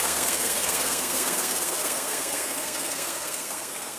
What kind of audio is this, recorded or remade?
remade